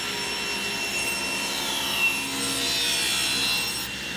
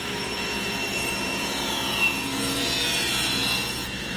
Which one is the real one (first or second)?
first